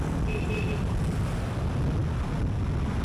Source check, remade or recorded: recorded